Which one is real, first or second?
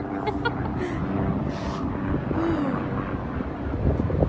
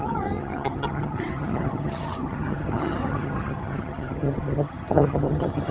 first